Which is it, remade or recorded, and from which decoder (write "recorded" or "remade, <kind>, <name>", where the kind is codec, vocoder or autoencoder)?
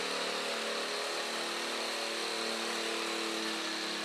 recorded